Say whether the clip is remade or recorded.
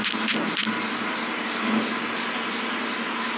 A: recorded